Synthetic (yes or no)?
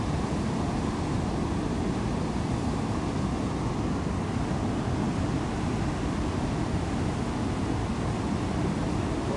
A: no